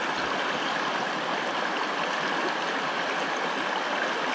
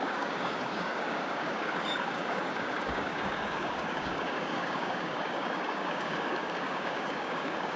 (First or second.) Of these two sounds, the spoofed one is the second